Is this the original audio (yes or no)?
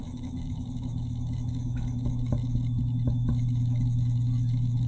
no